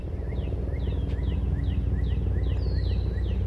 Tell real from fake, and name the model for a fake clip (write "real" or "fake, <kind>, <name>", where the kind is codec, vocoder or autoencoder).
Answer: real